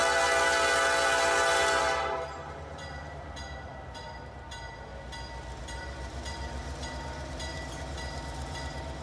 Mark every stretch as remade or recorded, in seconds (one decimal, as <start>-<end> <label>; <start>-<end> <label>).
0.0-1.8 recorded; 1.8-4.9 remade; 4.9-5.6 recorded; 5.6-9.0 remade

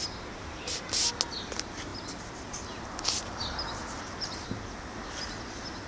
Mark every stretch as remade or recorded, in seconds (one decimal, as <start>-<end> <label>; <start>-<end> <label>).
0.0-5.9 recorded

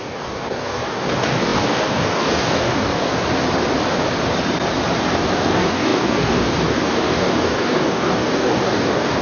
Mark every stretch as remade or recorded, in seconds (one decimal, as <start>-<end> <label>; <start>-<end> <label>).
0.0-3.1 remade; 3.1-5.2 recorded; 5.2-9.2 remade

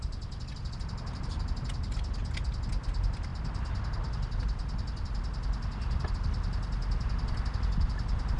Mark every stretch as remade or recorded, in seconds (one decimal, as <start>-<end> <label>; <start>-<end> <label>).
0.0-8.4 recorded

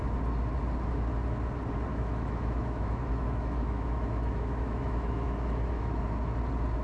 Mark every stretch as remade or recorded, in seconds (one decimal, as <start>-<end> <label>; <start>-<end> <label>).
0.0-1.9 recorded; 1.9-6.0 remade; 6.0-6.8 recorded

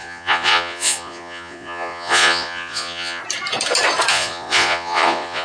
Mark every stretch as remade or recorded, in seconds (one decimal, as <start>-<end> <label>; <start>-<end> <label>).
0.0-3.2 remade; 3.2-4.1 recorded; 4.1-5.4 remade

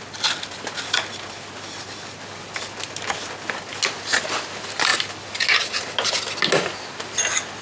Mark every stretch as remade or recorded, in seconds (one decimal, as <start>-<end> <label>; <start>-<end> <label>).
0.0-7.6 recorded

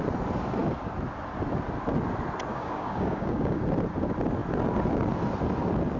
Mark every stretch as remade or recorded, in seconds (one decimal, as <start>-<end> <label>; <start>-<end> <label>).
0.0-2.5 recorded; 2.5-3.6 remade; 3.6-6.0 recorded